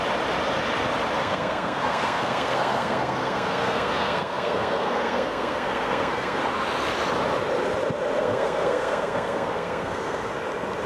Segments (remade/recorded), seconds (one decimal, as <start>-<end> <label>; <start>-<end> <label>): 0.0-1.2 recorded; 1.2-6.4 remade; 6.4-8.2 recorded; 8.2-10.3 remade; 10.3-10.9 recorded